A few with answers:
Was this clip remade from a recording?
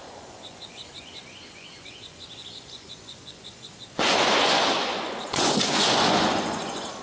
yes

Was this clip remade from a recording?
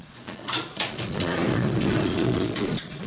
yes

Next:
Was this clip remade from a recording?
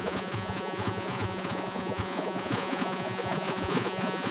yes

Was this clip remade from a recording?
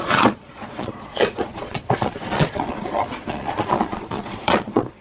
yes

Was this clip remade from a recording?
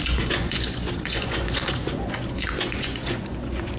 yes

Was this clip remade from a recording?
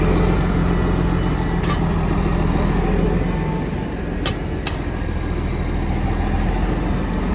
no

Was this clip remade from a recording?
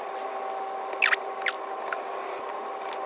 no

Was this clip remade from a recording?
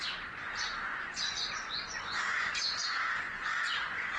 yes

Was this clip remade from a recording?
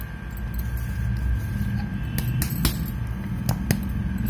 no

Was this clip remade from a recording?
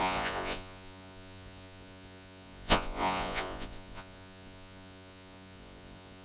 yes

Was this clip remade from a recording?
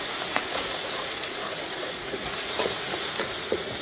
yes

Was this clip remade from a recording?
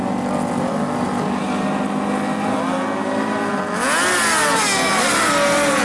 no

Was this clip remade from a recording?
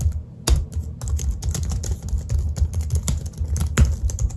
no